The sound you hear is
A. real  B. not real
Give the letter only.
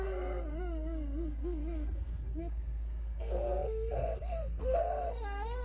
B